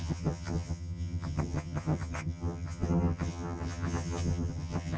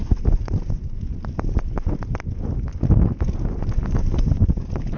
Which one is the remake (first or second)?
first